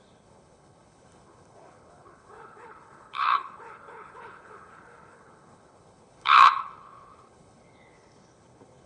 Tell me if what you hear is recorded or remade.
remade